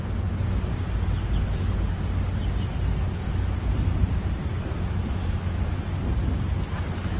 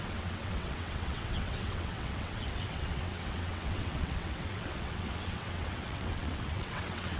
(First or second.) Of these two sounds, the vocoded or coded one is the second